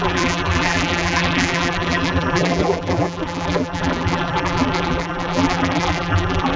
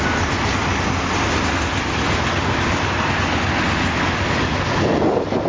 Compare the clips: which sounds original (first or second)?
second